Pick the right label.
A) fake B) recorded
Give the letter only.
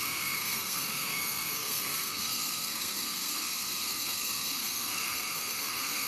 A